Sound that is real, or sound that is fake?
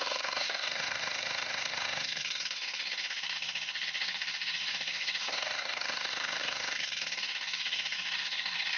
fake